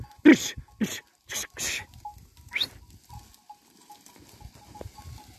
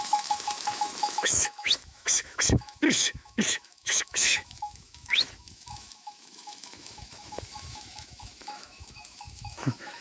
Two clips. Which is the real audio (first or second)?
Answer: first